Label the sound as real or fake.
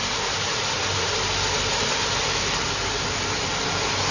real